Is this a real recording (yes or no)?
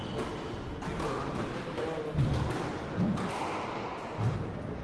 yes